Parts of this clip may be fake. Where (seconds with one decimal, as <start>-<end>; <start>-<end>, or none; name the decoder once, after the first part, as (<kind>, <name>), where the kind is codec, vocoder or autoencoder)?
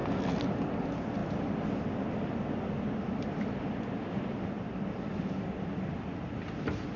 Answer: none